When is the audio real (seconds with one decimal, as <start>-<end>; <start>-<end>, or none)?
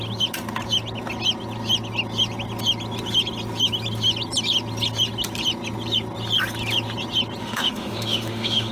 0.0-7.4